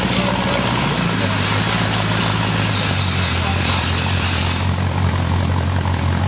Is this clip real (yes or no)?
yes